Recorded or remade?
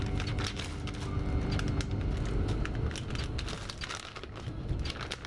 recorded